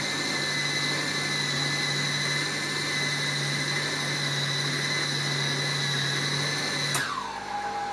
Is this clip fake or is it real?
real